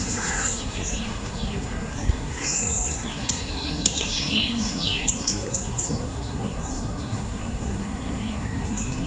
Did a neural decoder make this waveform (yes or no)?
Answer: yes